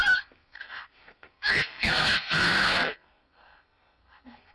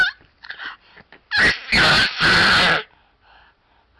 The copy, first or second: first